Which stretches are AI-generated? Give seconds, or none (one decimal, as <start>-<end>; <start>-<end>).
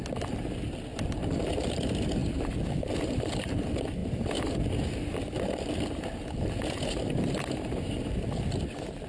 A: none